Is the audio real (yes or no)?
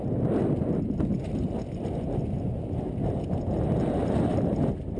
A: yes